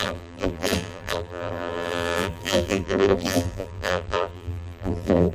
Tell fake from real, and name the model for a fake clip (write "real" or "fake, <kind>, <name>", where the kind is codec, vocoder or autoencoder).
fake, vocoder, BigVGAN v2